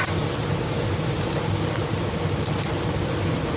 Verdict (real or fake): real